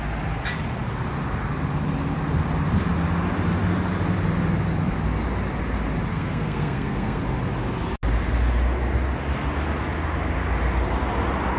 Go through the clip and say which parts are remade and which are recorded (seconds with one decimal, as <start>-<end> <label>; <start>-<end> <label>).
0.0-6.1 recorded; 6.1-7.2 remade; 7.2-11.6 recorded